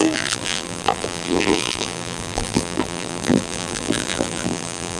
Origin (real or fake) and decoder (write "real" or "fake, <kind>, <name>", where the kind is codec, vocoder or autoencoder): fake, vocoder, BigVGAN v2